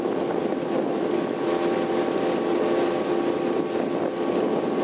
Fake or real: real